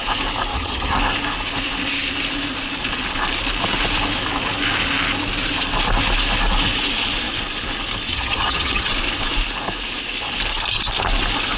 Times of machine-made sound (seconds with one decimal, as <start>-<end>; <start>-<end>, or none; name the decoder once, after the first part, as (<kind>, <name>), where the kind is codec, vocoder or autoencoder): 0.5-1.0 (vocoder, HiFi-GAN); 8.1-8.9